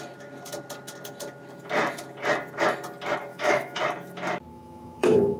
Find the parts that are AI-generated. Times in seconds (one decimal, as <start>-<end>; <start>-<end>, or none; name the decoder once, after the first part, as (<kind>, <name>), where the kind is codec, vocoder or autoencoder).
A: 3.3-3.8 (autoencoder, DAC-VAE); 4.5-5.4